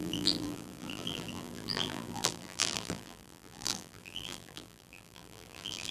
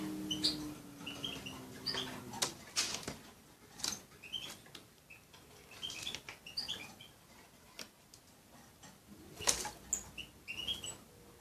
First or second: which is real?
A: second